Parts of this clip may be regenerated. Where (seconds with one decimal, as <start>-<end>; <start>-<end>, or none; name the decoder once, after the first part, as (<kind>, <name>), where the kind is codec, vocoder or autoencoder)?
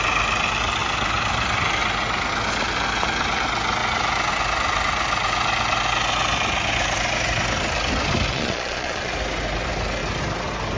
8.3-9.1 (vocoder, Vocos)